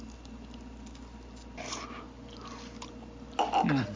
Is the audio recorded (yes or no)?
yes